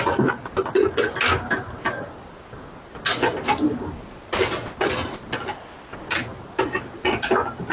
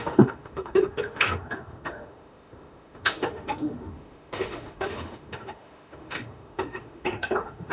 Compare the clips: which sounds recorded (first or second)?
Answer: first